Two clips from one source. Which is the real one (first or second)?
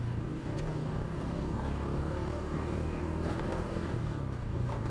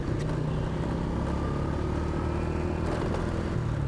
second